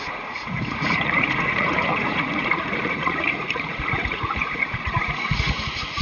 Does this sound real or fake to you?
fake